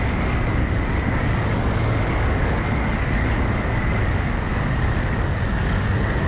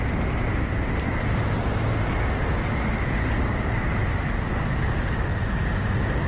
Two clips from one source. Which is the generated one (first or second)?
first